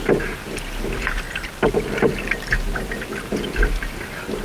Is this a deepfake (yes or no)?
no